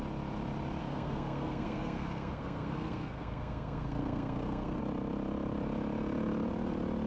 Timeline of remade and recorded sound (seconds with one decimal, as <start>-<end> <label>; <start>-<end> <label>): 0.0-0.8 recorded; 0.8-4.8 remade; 4.8-7.1 recorded

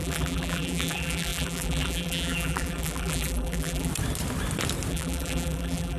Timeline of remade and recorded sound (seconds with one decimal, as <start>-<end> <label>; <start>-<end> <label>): 0.0-3.9 remade; 3.9-4.9 recorded; 4.9-6.0 remade

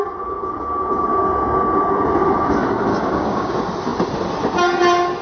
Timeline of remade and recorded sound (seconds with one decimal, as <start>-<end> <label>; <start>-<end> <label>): 0.0-2.9 recorded; 2.9-3.5 remade; 3.5-5.2 recorded